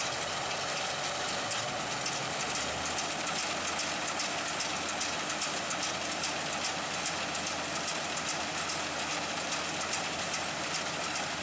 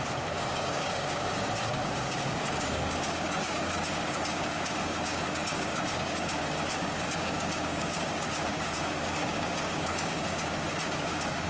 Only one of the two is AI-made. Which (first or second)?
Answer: second